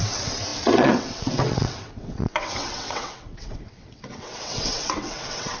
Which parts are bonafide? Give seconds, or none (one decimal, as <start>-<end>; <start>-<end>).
none